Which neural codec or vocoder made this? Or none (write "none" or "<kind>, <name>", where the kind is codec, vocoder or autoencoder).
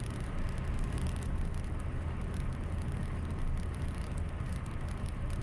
none